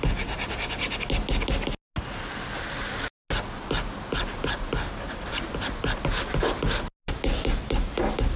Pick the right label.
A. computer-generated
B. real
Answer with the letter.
B